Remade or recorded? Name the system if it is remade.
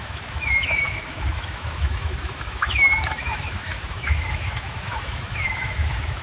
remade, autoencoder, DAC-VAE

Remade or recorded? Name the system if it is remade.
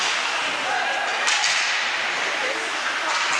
recorded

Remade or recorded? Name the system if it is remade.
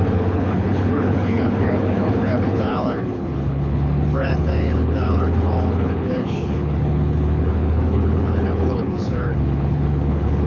remade, codec, HILCodec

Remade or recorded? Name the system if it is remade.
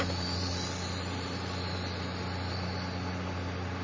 remade, vocoder, BigVGAN v2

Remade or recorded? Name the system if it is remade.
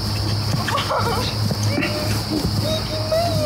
recorded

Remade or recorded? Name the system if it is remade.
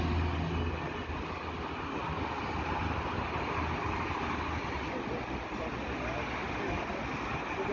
recorded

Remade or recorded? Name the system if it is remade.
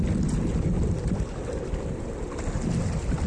recorded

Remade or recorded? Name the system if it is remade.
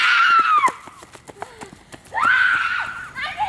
recorded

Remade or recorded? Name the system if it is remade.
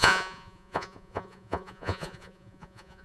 remade, vocoder, Vocos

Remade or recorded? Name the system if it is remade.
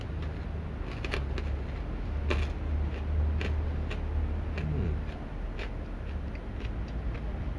recorded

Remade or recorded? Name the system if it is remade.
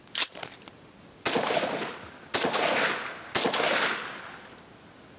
recorded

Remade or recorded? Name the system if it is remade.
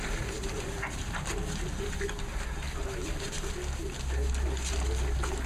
recorded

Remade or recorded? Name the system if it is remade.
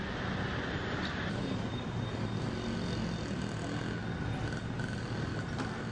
recorded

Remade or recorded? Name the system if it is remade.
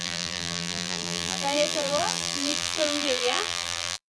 remade, vocoder, BigVGAN v2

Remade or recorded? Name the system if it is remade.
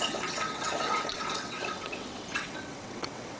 remade, vocoder, WaveNeXt